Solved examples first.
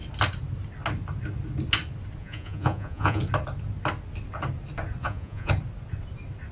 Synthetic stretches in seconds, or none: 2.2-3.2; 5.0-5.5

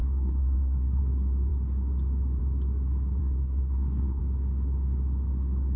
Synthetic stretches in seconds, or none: 0.0-1.0; 3.2-4.2

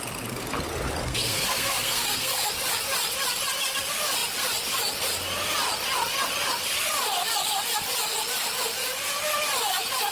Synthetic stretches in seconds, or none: 1.0-2.5

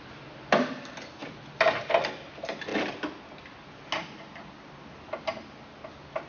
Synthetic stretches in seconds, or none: none

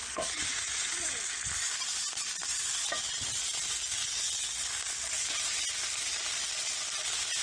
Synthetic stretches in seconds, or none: 0.0-1.1

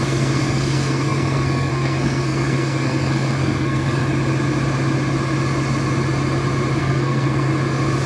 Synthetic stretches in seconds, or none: 0.0-4.0; 6.8-7.5